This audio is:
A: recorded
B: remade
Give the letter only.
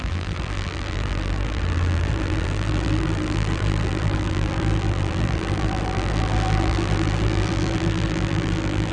B